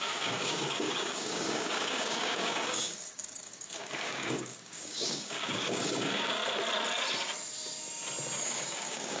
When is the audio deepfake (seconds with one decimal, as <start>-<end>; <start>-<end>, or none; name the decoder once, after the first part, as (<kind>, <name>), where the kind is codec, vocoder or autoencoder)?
0.0-6.4 (codec, DAC); 8.4-9.2